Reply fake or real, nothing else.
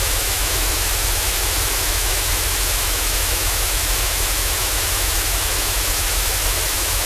fake